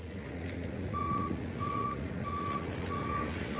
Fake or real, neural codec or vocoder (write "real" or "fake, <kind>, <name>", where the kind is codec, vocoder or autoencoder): fake, vocoder, Vocos